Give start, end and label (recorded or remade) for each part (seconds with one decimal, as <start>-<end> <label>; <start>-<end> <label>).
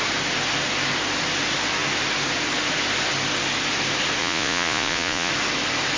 0.0-4.2 recorded; 4.2-5.3 remade; 5.3-6.0 recorded